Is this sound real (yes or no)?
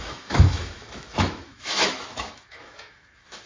no